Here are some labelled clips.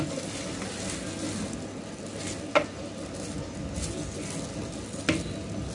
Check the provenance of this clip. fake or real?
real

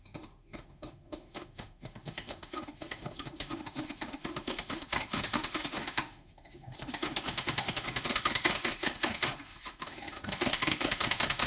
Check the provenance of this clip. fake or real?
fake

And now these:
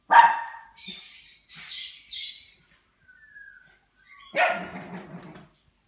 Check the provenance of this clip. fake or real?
real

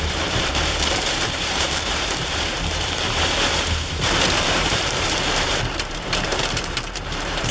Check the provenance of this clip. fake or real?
fake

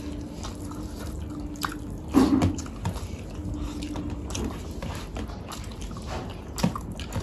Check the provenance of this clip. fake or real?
real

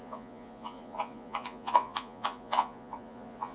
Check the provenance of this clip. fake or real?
fake